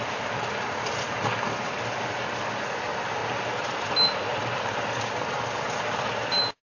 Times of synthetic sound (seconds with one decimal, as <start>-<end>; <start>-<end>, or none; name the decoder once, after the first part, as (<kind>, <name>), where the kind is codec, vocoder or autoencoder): none